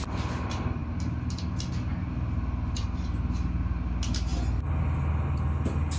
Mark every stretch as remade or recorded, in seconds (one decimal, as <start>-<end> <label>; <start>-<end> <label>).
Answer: 0.0-6.0 recorded